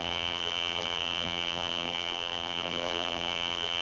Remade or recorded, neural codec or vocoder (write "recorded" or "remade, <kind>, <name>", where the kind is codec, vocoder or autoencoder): remade, vocoder, BigVGAN v2